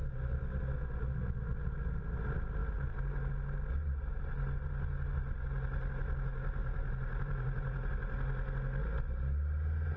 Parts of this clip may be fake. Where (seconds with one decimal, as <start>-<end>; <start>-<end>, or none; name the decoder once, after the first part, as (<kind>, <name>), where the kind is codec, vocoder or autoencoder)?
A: 6.6-7.9 (vocoder, BigVGAN v2)